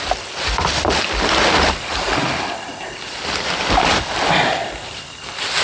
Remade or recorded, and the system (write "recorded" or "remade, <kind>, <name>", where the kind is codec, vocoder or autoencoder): recorded